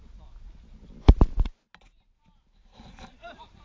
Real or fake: real